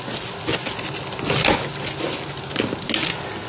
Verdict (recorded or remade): recorded